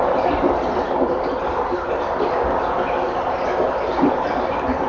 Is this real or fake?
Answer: real